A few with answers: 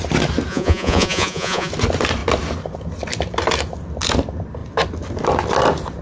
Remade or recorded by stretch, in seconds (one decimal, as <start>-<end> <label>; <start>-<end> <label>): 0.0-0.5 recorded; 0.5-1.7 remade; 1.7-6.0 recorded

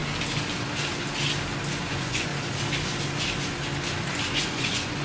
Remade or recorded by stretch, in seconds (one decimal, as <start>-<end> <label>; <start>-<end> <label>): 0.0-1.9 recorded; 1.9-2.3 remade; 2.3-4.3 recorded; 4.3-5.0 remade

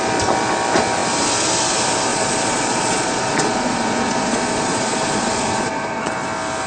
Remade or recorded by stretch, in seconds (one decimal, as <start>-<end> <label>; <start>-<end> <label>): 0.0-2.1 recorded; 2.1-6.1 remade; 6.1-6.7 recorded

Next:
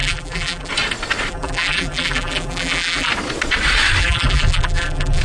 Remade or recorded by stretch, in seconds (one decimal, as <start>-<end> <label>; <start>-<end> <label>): 0.0-0.7 remade; 0.7-1.3 recorded; 1.3-3.1 remade; 3.1-4.0 recorded; 4.0-5.2 remade

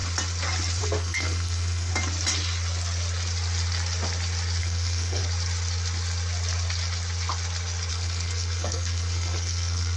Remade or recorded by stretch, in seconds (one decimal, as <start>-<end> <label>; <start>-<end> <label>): 0.0-0.8 recorded; 0.8-1.9 remade; 1.9-4.6 recorded; 4.6-5.2 remade; 5.2-7.9 recorded; 7.9-10.0 remade

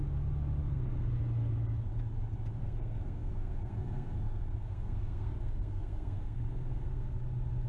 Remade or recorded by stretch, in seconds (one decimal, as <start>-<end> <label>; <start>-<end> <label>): 0.0-0.6 recorded; 0.6-1.2 remade; 1.2-2.6 recorded; 2.6-7.2 remade; 7.2-7.7 recorded

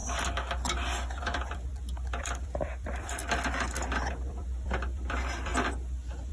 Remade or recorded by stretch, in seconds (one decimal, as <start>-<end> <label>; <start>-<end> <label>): 0.0-1.2 recorded; 1.2-3.2 remade; 3.2-4.1 recorded; 4.1-5.5 remade; 5.5-6.3 recorded